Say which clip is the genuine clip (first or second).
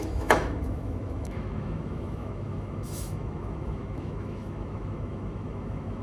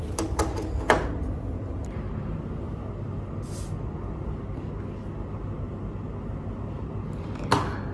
second